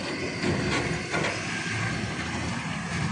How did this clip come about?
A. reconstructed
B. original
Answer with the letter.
B